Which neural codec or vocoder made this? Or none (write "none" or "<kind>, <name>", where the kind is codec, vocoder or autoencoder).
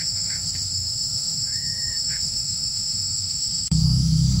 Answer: autoencoder, DAC-VAE